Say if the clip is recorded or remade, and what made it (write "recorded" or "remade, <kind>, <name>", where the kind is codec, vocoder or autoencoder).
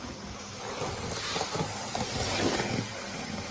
recorded